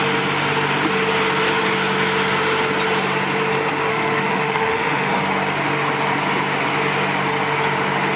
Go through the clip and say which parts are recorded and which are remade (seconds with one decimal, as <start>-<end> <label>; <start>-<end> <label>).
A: 0.0-3.9 recorded; 3.9-5.2 remade; 5.2-8.2 recorded